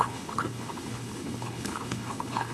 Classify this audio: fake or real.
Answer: fake